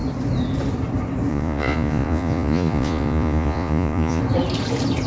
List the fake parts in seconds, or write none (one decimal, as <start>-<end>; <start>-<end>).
1.3-4.2

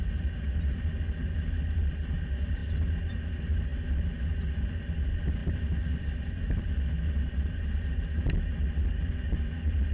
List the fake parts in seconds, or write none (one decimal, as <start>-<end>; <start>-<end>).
5.4-7.8

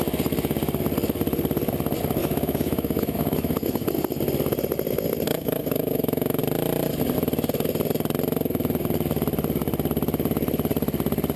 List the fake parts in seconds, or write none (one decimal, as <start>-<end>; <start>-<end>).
2.2-3.9; 5.3-6.4

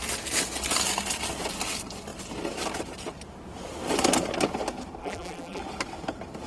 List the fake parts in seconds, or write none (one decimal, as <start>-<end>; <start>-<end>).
5.0-5.6

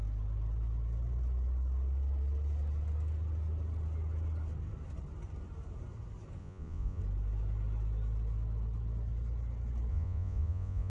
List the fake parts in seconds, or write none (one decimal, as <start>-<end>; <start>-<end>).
6.4-7.0; 9.9-10.9

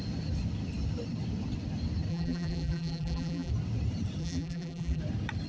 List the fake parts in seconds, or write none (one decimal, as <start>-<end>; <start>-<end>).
2.1-3.5; 4.2-5.0

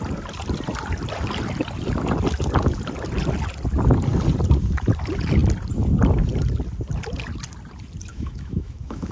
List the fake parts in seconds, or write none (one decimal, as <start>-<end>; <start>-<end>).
8.1-9.1

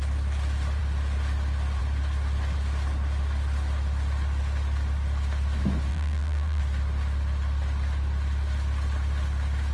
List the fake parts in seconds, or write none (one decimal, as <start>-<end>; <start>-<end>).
5.9-6.6